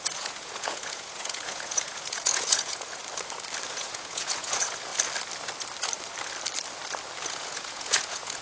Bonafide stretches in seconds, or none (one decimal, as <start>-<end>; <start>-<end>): 3.0-3.7; 4.9-7.2